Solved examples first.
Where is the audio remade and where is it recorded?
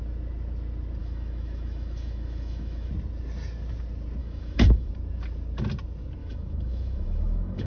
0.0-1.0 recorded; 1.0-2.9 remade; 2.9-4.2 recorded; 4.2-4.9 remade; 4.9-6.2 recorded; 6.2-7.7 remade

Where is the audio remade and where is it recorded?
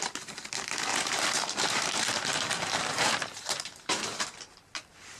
0.0-0.9 recorded; 0.9-4.0 remade; 4.0-5.2 recorded